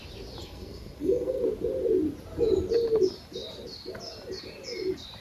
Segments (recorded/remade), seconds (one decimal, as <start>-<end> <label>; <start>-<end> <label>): 0.0-0.4 recorded; 0.4-1.4 remade; 1.4-5.2 recorded